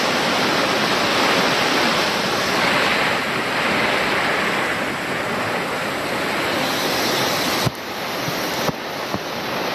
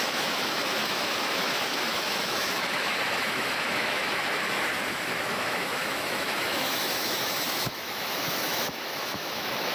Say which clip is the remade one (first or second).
second